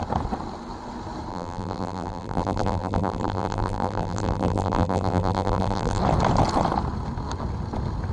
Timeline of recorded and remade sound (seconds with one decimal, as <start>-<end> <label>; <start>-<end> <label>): 0.0-1.3 recorded; 1.3-6.0 remade; 6.0-8.1 recorded